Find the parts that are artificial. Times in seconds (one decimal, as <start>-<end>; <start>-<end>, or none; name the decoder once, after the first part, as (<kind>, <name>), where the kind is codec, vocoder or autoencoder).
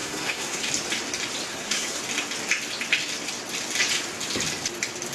0.0-0.7 (codec, SNAC); 1.5-2.0